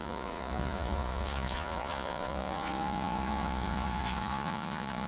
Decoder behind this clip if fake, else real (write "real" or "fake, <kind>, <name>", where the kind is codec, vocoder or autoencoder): fake, vocoder, Vocos